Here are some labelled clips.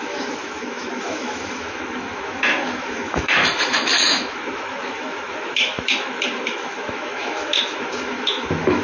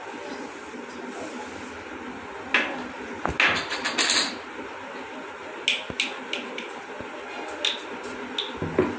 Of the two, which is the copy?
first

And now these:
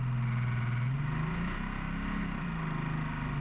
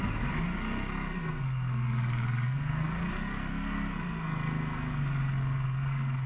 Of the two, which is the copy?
second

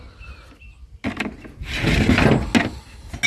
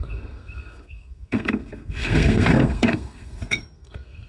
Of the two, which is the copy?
second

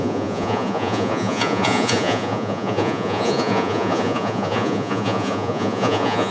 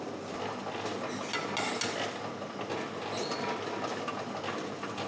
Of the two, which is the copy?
first